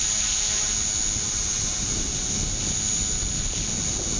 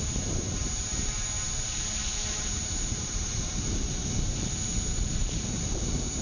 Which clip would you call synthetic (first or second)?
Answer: second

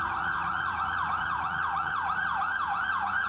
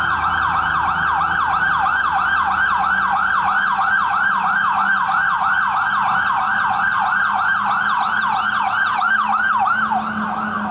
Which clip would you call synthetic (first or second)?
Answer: first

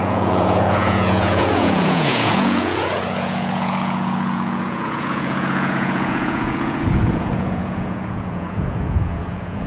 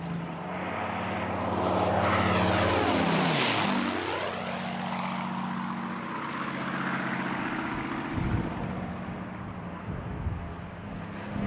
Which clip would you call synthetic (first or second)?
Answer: first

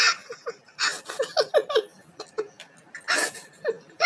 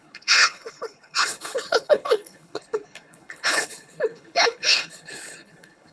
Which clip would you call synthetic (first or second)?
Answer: second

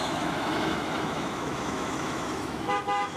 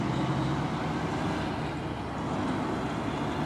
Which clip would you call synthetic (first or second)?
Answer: first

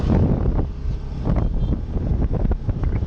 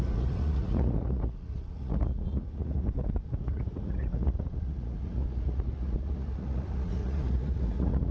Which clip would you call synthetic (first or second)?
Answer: second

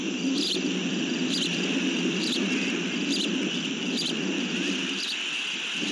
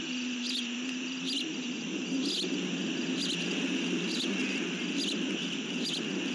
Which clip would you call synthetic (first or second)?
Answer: first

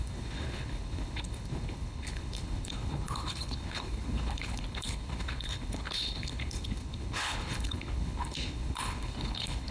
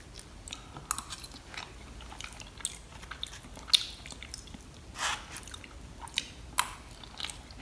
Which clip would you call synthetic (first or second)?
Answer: first